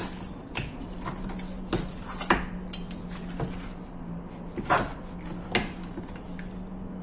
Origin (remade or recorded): recorded